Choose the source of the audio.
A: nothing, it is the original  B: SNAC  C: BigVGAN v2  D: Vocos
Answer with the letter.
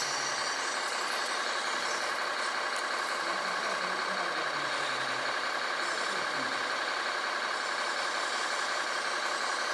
A